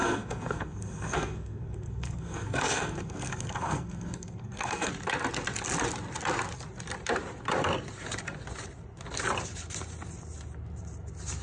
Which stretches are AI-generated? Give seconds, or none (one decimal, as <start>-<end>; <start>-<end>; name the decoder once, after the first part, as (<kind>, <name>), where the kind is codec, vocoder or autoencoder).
0.0-4.9 (codec, SNAC)